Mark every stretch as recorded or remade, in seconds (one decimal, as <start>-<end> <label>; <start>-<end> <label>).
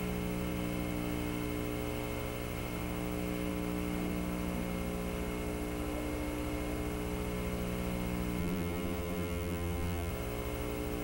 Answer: 0.0-8.4 recorded; 8.4-10.1 remade; 10.1-11.0 recorded